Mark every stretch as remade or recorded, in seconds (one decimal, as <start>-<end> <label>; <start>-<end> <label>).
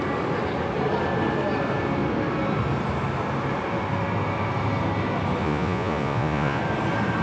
0.0-5.4 recorded; 5.4-6.6 remade; 6.6-7.2 recorded